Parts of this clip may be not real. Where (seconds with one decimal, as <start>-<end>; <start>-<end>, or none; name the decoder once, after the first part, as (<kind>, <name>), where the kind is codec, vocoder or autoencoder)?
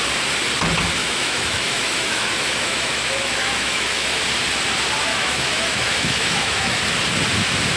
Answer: 1.0-4.2 (autoencoder, DAC-VAE); 5.1-6.8